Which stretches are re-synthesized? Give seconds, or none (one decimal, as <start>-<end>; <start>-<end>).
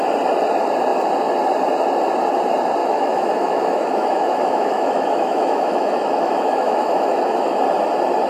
2.8-7.6